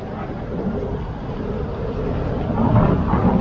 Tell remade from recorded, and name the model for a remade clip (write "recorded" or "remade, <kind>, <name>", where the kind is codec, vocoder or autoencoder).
recorded